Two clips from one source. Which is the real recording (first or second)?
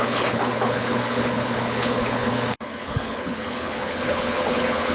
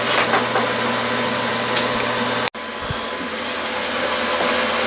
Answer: second